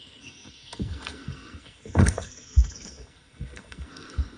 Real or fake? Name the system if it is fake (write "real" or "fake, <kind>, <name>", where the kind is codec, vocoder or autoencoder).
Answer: fake, codec, SNAC